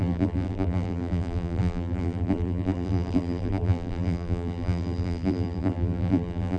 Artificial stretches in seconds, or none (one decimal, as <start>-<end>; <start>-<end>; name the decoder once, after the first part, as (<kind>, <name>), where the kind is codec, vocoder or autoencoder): 0.0-6.6 (vocoder, BigVGAN v2)